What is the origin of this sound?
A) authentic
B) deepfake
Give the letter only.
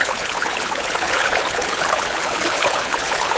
B